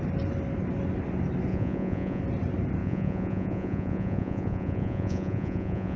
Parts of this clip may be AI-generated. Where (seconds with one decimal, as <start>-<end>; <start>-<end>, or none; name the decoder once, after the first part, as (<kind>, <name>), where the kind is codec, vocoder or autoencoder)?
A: 1.5-2.2 (vocoder, Vocos); 2.8-6.0